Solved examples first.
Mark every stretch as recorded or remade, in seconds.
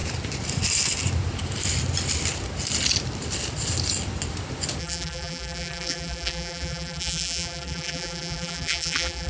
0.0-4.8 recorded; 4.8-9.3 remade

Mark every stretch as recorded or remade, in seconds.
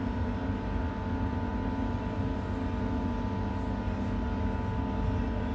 0.0-5.5 recorded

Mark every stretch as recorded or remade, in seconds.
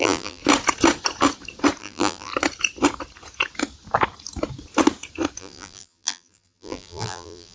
0.0-0.4 remade; 0.4-1.8 recorded; 1.8-2.3 remade; 2.3-5.4 recorded; 5.4-7.5 remade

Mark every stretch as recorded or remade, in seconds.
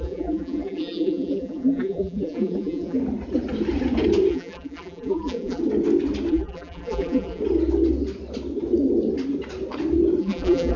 0.0-3.0 remade; 3.0-4.3 recorded; 4.3-5.6 remade; 5.6-6.3 recorded; 6.3-7.4 remade; 7.4-10.2 recorded; 10.2-10.8 remade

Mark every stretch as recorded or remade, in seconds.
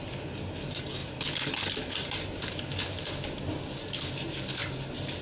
0.0-1.0 recorded; 1.0-4.1 remade; 4.1-5.2 recorded